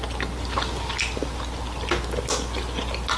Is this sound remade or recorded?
recorded